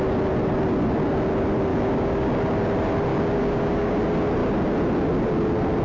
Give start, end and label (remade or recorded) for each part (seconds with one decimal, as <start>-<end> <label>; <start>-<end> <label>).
0.0-1.7 recorded; 1.7-2.3 remade; 2.3-3.1 recorded; 3.1-3.9 remade; 3.9-5.8 recorded